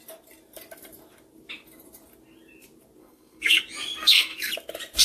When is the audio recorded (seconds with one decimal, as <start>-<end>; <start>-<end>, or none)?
0.0-3.0; 3.6-4.0; 4.5-5.0